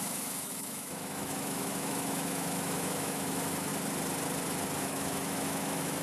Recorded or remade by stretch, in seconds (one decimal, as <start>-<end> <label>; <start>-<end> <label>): 0.0-3.7 remade; 3.7-4.8 recorded; 4.8-6.0 remade